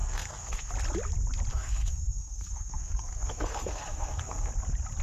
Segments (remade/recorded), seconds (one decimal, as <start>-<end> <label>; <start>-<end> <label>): 0.0-0.7 remade; 0.7-1.5 recorded; 1.5-4.5 remade; 4.5-5.0 recorded